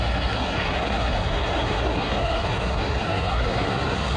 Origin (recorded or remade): remade